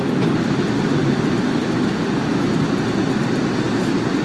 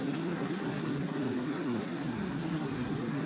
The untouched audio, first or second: first